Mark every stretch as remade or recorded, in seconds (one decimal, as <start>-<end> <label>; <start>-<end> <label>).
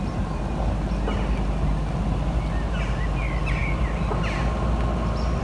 0.0-5.4 recorded